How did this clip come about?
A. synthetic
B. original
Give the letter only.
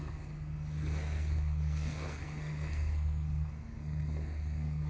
A